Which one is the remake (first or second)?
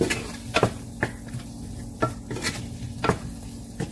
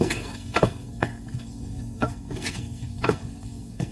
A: second